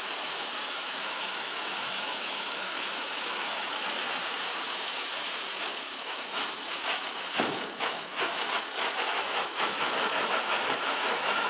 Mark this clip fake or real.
fake